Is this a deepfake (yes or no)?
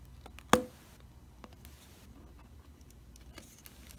no